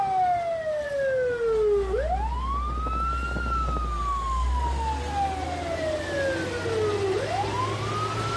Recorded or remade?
recorded